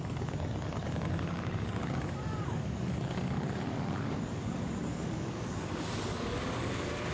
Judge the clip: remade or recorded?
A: remade